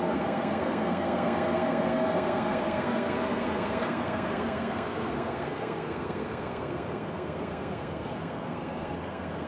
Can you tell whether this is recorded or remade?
remade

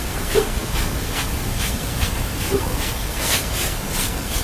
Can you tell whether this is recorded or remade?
remade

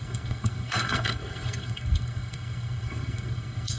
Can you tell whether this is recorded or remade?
remade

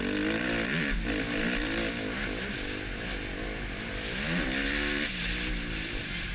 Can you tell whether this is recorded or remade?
recorded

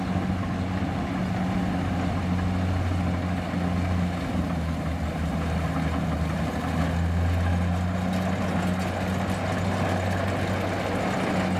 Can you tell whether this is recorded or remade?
recorded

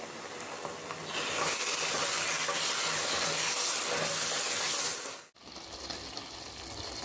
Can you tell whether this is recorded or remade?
recorded